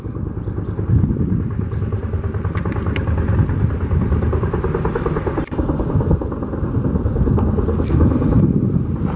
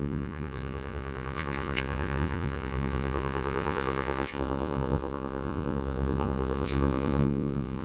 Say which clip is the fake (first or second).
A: second